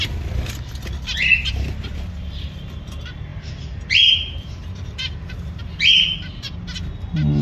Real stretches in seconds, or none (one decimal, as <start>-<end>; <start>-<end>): 0.0-3.3; 5.3-7.4